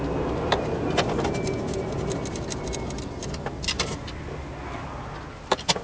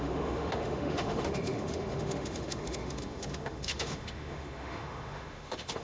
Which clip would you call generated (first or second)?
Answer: second